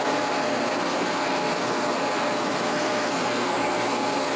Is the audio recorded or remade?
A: remade